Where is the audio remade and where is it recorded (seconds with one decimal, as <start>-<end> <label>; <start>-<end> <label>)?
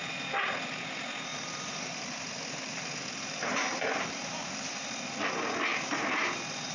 0.0-1.3 recorded; 1.3-5.3 remade; 5.3-5.7 recorded; 5.7-6.2 remade; 6.2-6.7 recorded